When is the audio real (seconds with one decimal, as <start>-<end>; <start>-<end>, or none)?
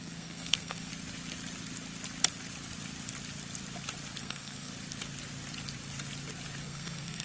0.9-4.2; 4.7-6.6